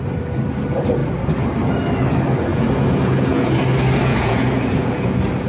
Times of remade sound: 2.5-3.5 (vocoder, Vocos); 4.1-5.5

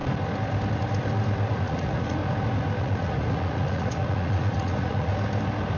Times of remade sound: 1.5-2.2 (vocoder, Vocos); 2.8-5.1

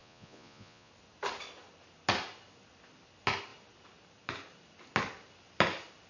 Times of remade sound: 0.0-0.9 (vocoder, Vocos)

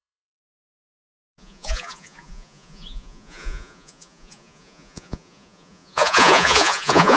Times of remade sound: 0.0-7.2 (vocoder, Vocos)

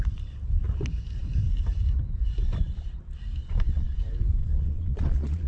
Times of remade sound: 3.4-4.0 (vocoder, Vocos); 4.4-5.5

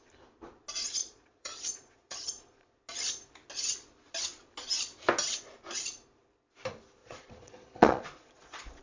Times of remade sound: 1.0-2.7 (vocoder, Vocos); 7.0-8.8